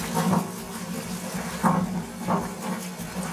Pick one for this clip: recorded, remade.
recorded